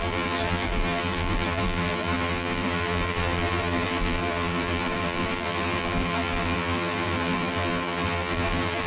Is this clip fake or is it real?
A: fake